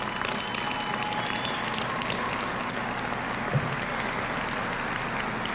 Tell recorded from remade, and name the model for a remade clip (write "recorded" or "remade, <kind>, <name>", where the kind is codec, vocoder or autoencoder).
recorded